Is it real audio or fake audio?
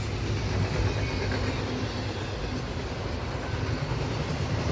real